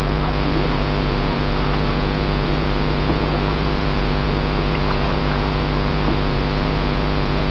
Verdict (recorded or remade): remade